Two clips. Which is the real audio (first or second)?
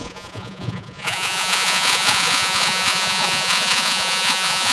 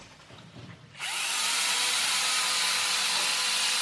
second